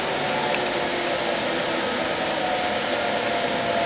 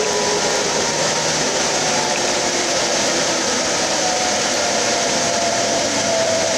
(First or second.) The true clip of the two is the first